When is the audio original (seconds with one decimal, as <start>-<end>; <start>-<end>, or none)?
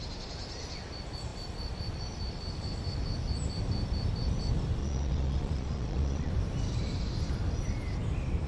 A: 0.0-4.8; 6.3-8.5